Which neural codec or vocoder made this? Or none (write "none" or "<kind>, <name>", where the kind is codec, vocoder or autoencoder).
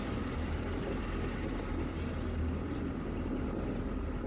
none